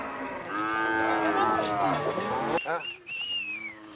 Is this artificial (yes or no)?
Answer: no